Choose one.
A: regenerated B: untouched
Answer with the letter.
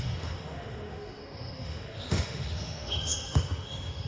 A